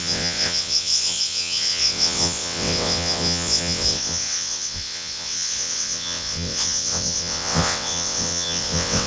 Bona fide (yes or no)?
no